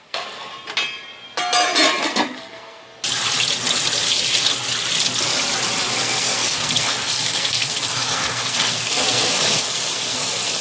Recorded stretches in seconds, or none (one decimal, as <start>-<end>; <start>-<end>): 0.5-2.0; 2.8-6.0